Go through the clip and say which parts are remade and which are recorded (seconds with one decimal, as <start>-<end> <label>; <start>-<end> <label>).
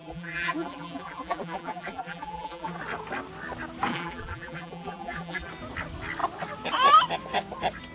0.0-2.8 remade; 2.8-3.9 recorded; 3.9-5.5 remade; 5.5-7.9 recorded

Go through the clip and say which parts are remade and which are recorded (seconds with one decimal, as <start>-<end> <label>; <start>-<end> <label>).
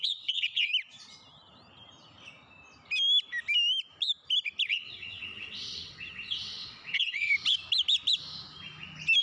0.0-0.7 remade; 0.7-4.7 recorded; 4.7-7.3 remade; 7.3-9.2 recorded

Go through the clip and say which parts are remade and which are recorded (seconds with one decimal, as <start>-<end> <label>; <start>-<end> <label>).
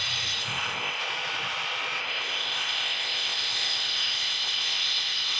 0.0-0.4 recorded; 0.4-1.0 remade; 1.0-2.0 recorded; 2.0-5.4 remade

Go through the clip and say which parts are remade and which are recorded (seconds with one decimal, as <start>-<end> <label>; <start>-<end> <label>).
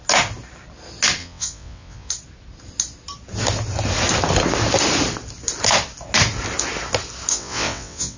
0.0-1.2 recorded; 1.2-2.1 remade; 2.1-7.3 recorded; 7.3-8.2 remade